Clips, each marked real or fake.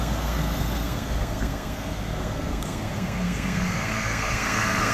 fake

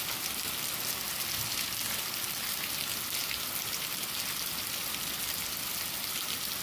real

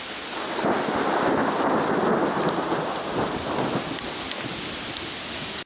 real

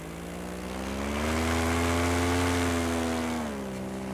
real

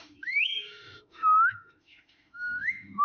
fake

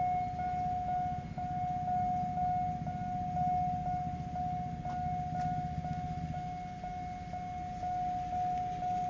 real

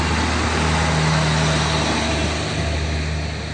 real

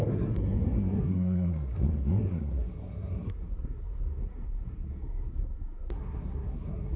fake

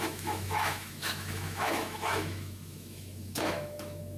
fake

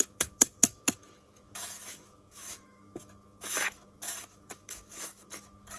fake